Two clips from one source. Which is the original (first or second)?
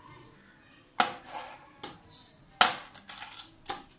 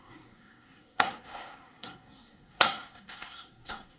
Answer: first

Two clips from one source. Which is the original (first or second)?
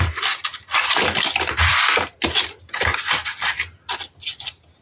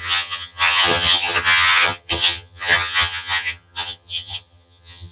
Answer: first